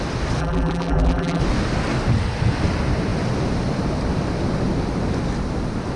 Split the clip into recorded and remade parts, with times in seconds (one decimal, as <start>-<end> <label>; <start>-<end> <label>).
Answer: 0.0-0.4 recorded; 0.4-1.4 remade; 1.4-6.0 recorded